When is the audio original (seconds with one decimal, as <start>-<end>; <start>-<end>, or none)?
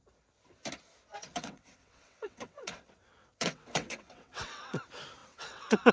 0.0-1.3; 4.8-5.2